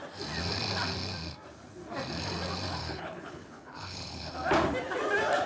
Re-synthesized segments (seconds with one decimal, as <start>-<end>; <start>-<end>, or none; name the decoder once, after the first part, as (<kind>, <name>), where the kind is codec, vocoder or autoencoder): 2.8-4.3 (codec, HILCodec)